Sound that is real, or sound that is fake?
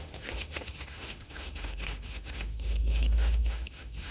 fake